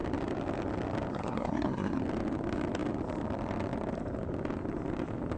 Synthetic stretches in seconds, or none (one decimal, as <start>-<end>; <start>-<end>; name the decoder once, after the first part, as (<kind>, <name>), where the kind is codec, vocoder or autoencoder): 1.1-2.0 (codec, SNAC)